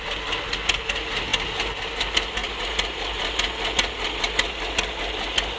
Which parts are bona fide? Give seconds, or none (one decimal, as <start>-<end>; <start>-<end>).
0.0-5.6